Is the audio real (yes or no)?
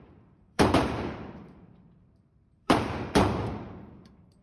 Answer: no